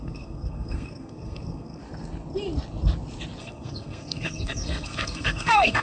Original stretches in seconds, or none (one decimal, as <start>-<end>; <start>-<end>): 1.8-3.4